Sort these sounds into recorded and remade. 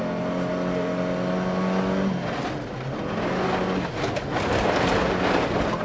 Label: recorded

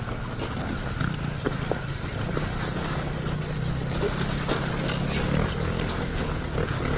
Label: recorded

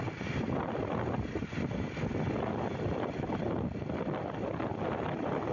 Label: recorded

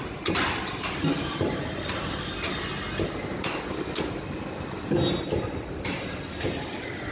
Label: recorded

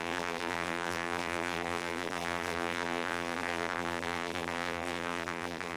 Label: remade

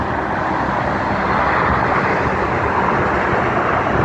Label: recorded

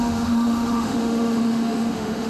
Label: remade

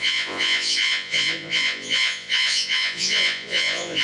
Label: remade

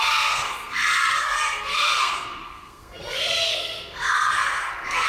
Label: remade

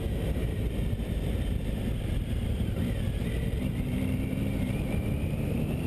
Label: remade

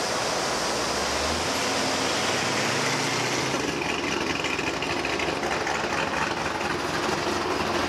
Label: recorded